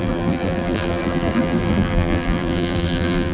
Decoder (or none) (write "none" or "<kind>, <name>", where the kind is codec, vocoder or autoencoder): vocoder, BigVGAN v2